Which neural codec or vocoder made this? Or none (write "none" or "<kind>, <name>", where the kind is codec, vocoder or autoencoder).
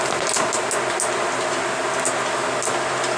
none